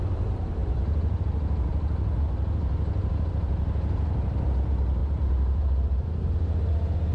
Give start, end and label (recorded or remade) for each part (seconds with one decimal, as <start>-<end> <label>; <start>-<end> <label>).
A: 0.0-0.6 recorded; 0.6-1.2 remade; 1.2-5.0 recorded; 5.0-6.2 remade; 6.2-7.1 recorded